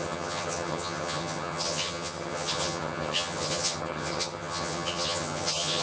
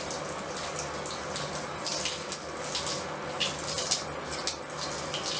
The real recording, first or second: second